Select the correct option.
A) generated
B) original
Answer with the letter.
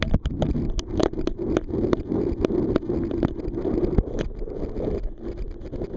B